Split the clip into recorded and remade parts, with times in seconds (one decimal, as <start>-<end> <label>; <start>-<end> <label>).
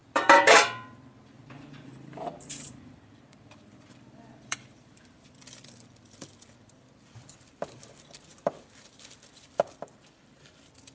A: 0.0-10.9 remade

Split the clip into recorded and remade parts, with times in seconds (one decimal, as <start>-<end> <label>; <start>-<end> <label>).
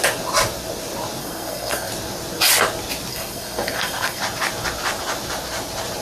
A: 0.0-1.2 recorded; 1.2-1.9 remade; 1.9-3.1 recorded; 3.1-4.2 remade; 4.2-6.0 recorded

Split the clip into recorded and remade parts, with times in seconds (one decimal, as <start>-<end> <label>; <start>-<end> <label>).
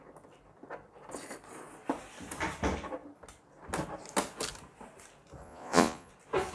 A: 0.0-5.4 recorded; 5.4-6.1 remade; 6.1-6.5 recorded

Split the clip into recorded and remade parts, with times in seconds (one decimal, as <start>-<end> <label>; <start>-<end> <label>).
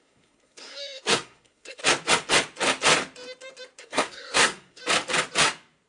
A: 0.0-1.8 remade; 1.8-3.8 recorded; 3.8-4.8 remade; 4.8-5.9 recorded